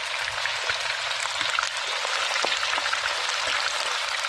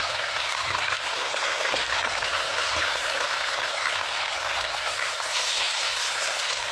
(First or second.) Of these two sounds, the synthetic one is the second